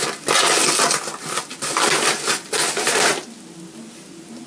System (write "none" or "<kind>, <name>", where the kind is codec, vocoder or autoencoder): none